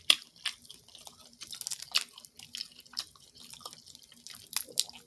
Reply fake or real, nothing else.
real